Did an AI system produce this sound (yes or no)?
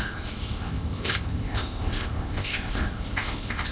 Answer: yes